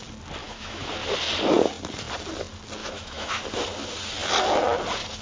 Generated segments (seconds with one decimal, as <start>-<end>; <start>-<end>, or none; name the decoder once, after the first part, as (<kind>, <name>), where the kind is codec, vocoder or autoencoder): 0.4-0.9 (autoencoder, DAC-VAE); 2.8-3.4